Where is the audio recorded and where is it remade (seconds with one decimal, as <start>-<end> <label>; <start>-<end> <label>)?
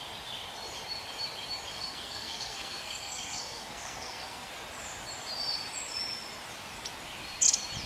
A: 0.0-1.7 recorded; 1.7-4.5 remade; 4.5-7.9 recorded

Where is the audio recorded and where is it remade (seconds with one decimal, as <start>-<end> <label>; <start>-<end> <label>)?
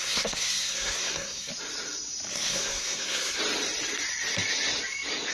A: 0.0-1.5 remade; 1.5-2.3 recorded; 2.3-3.4 remade; 3.4-5.3 recorded